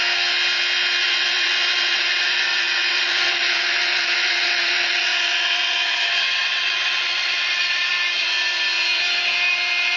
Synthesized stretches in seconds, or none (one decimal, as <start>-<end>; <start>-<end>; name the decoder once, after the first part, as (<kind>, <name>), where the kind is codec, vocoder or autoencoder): 1.0-7.9 (vocoder, WaveNeXt)